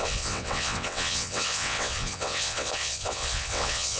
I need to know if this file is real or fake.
fake